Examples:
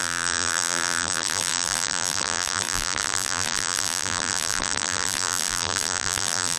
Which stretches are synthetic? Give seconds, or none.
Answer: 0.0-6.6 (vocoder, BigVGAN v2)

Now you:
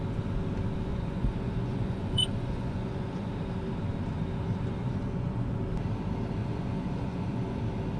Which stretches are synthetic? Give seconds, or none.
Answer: 0.9-3.3 (vocoder, Vocos); 4.8-5.6; 6.4-7.6

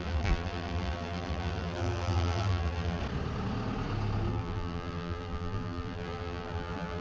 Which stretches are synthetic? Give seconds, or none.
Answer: 0.0-3.0 (vocoder, BigVGAN v2); 4.3-7.0

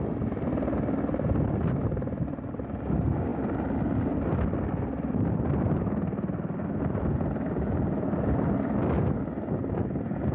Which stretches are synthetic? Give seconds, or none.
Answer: none

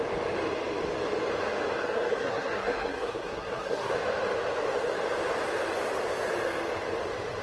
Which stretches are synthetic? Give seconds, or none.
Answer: 1.8-3.9 (codec, SNAC)

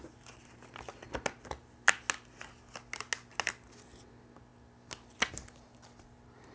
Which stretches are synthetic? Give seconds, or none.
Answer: none

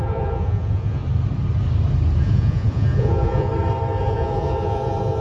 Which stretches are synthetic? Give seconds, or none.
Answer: 0.0-1.0 (vocoder, Vocos); 2.2-3.5; 4.0-5.2